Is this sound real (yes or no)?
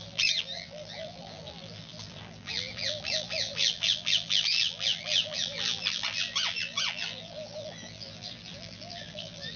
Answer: no